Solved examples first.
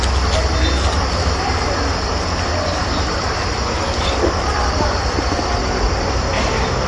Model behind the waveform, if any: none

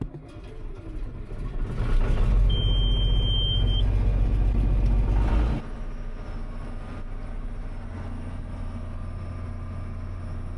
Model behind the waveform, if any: none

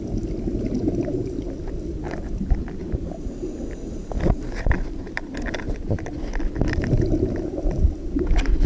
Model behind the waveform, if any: none